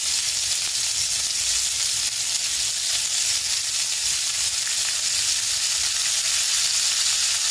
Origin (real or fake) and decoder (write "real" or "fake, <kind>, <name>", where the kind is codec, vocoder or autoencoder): real